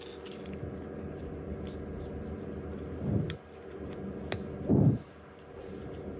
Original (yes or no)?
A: yes